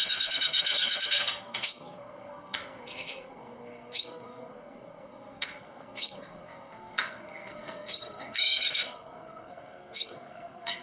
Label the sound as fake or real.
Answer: fake